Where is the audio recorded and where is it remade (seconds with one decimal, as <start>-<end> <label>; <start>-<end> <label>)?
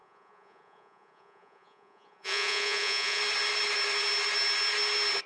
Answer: 0.0-3.2 remade; 3.2-5.3 recorded